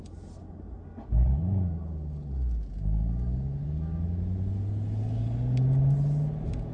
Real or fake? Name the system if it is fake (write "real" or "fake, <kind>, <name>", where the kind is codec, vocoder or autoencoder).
real